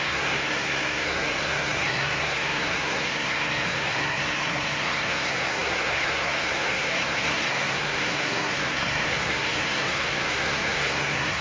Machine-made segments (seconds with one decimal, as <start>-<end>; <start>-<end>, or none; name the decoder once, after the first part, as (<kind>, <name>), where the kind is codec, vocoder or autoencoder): 0.0-11.4 (codec, SNAC)